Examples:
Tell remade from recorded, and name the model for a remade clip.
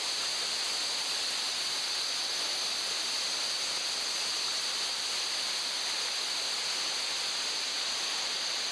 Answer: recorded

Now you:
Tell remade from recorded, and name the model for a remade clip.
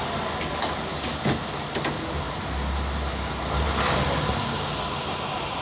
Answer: recorded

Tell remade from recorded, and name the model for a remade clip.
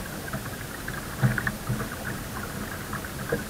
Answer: recorded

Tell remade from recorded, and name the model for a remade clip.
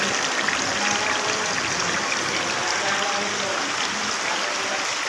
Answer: recorded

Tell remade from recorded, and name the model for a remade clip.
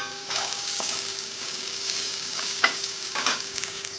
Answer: remade, codec, DAC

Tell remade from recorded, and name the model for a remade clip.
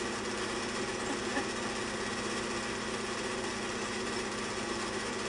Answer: recorded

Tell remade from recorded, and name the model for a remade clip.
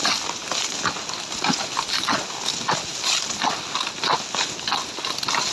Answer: recorded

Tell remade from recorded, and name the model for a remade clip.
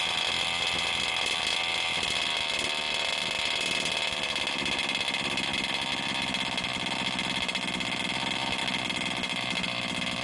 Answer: recorded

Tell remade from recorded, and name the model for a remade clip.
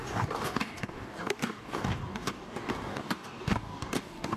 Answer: remade, codec, DAC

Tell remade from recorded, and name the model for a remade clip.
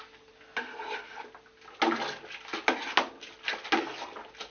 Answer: recorded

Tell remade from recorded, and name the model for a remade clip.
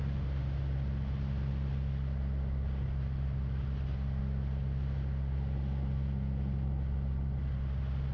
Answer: recorded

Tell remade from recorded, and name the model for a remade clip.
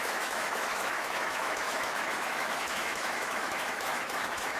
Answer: remade, autoencoder, DAC-VAE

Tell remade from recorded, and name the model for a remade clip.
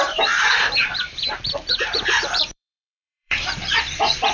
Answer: remade, vocoder, BigVGAN v2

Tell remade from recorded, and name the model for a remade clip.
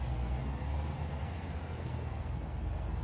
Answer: remade, codec, SNAC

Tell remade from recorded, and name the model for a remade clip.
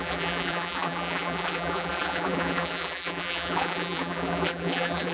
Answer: remade, vocoder, BigVGAN v2